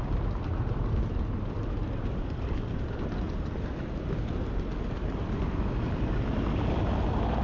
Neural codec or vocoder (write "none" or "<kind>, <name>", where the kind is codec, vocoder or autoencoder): none